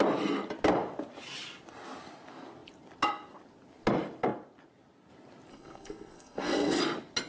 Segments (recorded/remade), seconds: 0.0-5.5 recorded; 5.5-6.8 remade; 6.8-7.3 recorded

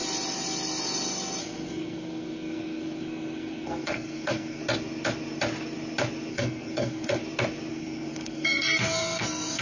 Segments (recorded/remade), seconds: 0.0-1.4 recorded; 1.4-4.6 remade; 4.6-6.3 recorded; 6.3-7.2 remade; 7.2-7.7 recorded; 7.7-9.6 remade